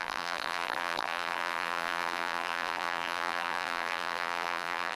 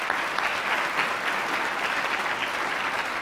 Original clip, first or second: second